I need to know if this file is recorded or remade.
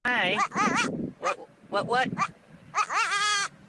recorded